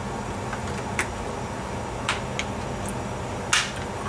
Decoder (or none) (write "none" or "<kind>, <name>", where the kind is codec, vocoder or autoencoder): none